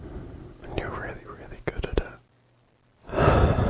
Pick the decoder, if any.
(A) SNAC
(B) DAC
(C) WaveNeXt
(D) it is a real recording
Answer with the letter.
D